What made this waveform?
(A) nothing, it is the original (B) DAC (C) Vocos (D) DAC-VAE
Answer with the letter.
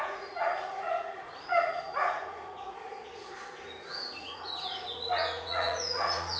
C